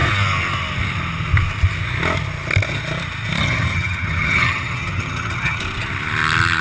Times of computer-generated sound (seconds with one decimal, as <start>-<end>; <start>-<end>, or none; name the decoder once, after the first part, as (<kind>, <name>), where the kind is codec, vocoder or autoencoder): 3.4-5.6 (vocoder, HiFi-GAN)